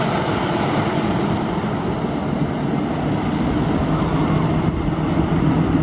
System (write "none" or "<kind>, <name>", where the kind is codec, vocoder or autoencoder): none